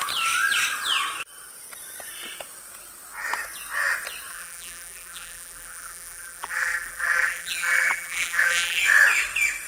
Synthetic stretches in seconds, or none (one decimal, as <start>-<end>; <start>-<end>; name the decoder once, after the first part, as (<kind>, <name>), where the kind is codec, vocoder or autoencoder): 4.3-8.8 (vocoder, BigVGAN v2)